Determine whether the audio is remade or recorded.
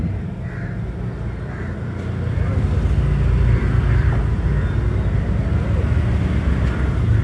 recorded